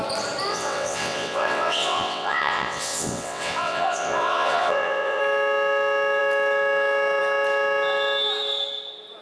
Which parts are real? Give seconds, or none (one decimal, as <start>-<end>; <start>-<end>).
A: 0.0-0.5; 5.2-9.2

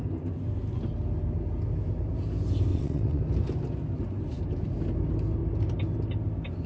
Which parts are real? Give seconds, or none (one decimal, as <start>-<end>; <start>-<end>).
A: 0.0-2.7; 3.2-6.7

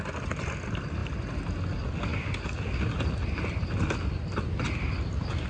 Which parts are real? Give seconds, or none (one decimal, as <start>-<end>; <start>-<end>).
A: 0.0-5.5

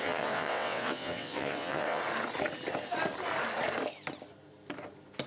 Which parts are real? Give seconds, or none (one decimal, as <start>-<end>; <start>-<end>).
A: 2.0-5.3

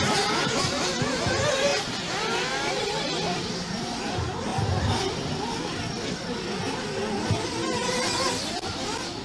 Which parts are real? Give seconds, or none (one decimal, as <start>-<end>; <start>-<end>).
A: 0.0-9.2

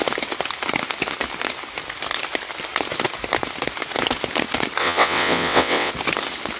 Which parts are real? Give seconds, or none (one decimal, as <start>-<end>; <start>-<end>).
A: 0.0-4.8; 5.9-6.6